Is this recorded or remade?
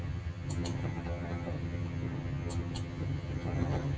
remade